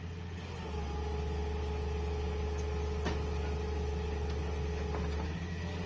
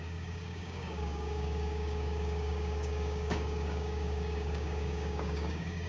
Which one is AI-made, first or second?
second